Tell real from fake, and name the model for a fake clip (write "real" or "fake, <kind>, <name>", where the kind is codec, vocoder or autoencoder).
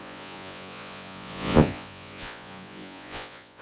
fake, vocoder, Vocos